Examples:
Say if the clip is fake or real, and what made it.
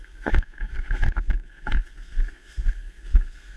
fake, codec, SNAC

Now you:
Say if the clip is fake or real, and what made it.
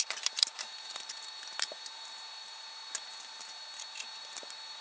fake, vocoder, BigVGAN v2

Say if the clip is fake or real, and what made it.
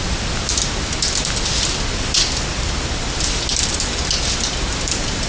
real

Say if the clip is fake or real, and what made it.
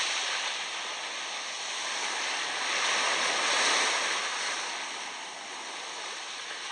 real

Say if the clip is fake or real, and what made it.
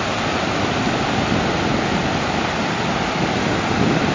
real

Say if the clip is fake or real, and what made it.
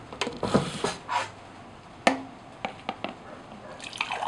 real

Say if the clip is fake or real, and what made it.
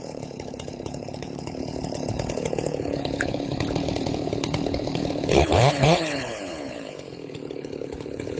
fake, codec, HILCodec